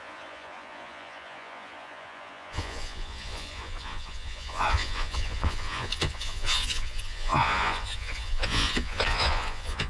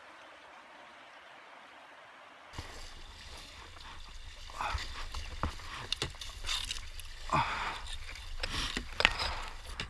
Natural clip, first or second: second